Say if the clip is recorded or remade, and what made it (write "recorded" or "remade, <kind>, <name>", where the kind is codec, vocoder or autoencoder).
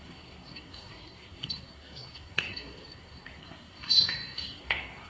remade, codec, SNAC